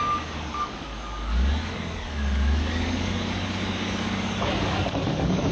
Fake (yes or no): yes